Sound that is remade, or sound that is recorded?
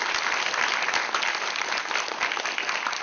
recorded